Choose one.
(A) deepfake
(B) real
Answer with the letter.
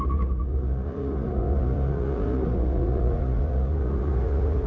A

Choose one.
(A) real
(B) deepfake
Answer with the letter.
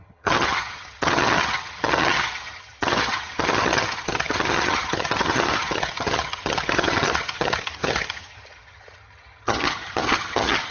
B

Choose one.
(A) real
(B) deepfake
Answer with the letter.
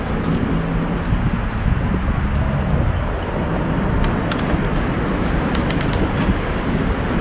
A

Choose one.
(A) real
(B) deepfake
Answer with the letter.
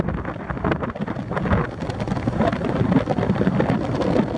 A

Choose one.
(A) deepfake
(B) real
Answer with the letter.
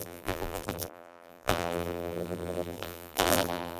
A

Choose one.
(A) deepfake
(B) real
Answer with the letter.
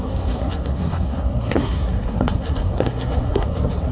A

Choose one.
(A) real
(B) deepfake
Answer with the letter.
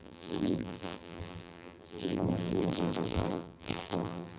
B